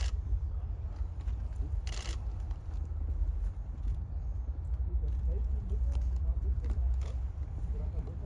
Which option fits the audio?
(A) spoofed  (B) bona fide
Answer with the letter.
A